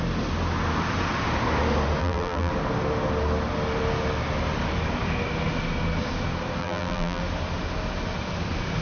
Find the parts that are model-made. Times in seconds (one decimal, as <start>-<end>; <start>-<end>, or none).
2.0-2.5; 6.6-7.2